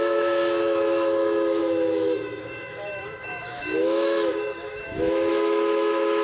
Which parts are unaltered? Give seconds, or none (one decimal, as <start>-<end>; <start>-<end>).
none